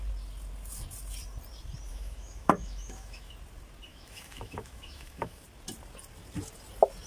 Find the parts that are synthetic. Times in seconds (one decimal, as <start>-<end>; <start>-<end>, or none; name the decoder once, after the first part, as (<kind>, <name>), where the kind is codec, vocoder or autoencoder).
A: 1.9-3.3 (autoencoder, DAC-VAE); 3.9-5.4